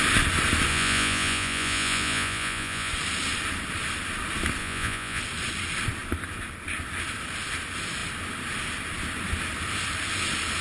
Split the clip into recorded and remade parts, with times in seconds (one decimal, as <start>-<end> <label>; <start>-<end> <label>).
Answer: 0.0-0.7 recorded; 0.7-2.9 remade; 2.9-4.6 recorded; 4.6-5.2 remade; 5.2-10.6 recorded